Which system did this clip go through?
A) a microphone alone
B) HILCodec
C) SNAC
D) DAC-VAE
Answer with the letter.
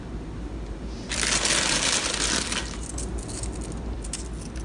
A